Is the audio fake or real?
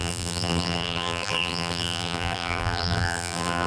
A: fake